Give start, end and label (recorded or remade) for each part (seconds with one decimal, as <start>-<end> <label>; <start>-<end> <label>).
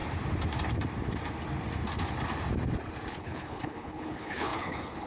0.0-3.1 recorded; 3.1-5.1 remade